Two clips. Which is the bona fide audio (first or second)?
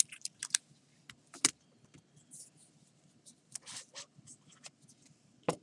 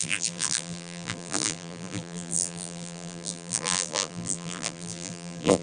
first